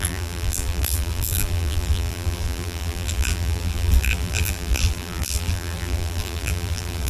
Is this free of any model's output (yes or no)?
no